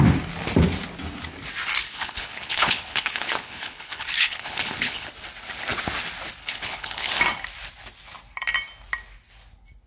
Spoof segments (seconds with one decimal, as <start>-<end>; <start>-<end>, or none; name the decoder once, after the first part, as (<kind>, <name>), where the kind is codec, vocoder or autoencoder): 1.8-5.1 (codec, HILCodec); 6.4-7.2